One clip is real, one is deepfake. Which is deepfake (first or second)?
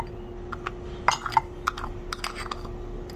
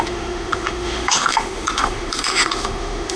second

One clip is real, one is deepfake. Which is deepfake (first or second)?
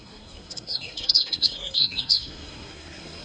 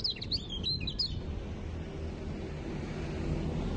first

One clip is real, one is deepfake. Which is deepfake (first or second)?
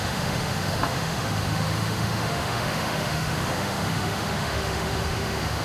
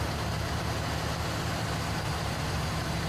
first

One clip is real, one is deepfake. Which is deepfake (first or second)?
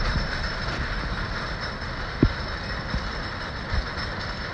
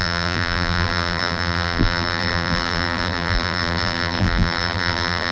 second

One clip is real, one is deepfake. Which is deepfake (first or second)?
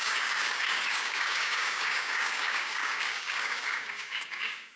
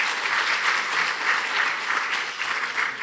first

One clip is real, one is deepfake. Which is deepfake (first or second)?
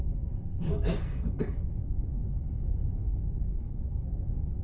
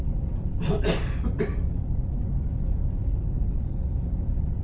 first